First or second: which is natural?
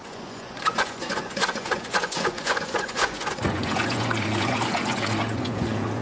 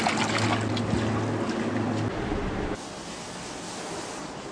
second